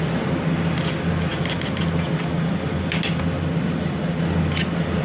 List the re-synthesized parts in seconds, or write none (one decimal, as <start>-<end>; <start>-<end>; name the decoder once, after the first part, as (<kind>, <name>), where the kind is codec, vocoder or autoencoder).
none